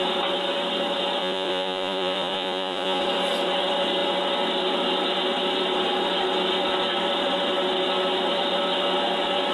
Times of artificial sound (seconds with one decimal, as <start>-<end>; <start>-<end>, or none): 1.2-3.0